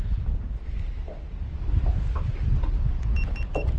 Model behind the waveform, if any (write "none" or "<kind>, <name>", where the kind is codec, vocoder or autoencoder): none